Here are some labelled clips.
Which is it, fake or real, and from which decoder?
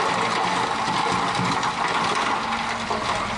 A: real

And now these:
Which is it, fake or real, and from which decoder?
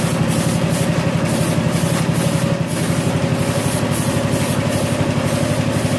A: real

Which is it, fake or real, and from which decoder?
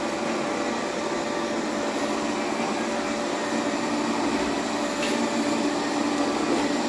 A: real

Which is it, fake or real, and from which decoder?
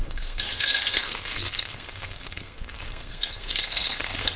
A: fake, codec, SNAC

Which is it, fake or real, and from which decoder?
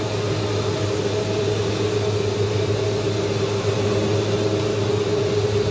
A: real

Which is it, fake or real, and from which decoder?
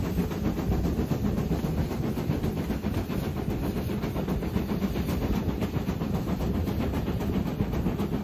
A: real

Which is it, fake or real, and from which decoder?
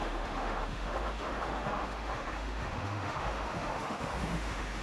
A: fake, autoencoder, DAC-VAE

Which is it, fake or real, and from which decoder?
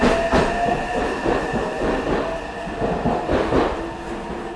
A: real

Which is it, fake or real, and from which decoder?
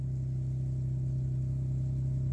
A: real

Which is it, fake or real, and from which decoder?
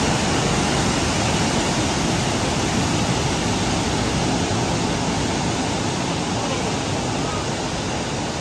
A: real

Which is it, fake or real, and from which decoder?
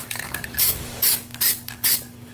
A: fake, codec, DAC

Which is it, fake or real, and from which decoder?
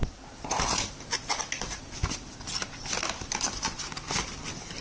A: real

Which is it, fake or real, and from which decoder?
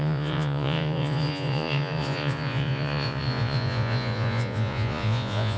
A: fake, vocoder, Vocos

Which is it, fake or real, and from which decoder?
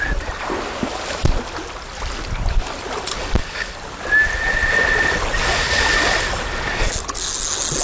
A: real